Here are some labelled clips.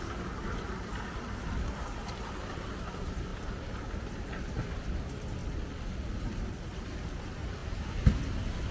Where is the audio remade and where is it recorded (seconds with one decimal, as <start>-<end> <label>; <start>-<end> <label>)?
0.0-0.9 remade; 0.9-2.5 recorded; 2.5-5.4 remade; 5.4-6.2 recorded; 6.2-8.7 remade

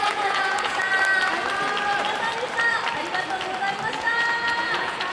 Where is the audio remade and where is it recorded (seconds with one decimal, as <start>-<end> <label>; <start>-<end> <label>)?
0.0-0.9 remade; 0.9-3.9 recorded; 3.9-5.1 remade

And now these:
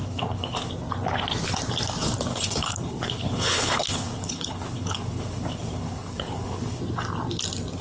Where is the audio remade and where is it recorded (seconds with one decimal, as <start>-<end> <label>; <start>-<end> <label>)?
0.0-0.7 remade; 0.7-2.3 recorded; 2.3-6.8 remade; 6.8-7.8 recorded

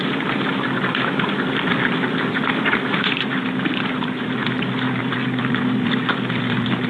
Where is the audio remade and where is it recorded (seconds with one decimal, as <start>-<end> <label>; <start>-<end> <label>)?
0.0-4.4 remade; 4.4-5.0 recorded; 5.0-6.9 remade

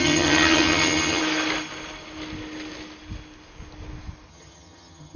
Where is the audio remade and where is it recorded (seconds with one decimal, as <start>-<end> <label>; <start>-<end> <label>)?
0.0-1.2 remade; 1.2-4.3 recorded; 4.3-5.2 remade

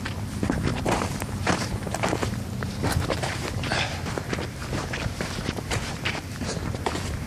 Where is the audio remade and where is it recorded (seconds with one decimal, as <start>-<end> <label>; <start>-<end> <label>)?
0.0-0.7 recorded; 0.7-3.9 remade; 3.9-4.6 recorded; 4.6-6.8 remade; 6.8-7.3 recorded

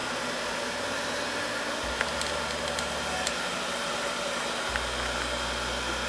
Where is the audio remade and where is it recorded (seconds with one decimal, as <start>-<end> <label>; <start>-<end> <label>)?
0.0-6.1 recorded